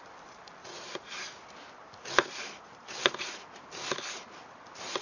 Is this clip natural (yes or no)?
no